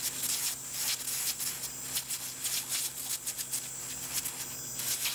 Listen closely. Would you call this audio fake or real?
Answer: real